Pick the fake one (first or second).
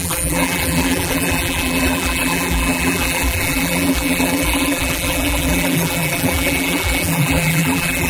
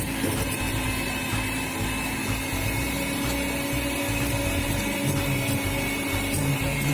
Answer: first